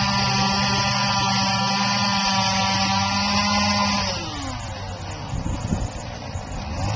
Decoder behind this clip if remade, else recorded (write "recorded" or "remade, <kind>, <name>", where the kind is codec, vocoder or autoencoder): recorded